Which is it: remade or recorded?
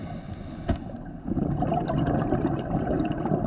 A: recorded